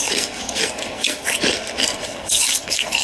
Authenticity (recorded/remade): remade